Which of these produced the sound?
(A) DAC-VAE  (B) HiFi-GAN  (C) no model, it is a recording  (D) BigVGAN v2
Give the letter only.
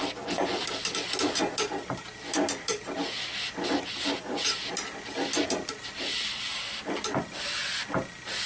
C